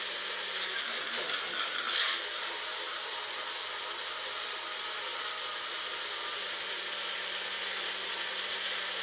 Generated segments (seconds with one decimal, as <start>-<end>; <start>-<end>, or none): none